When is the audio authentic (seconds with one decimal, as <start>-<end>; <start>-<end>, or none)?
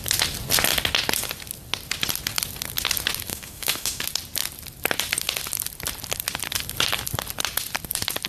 0.0-3.3; 4.0-8.3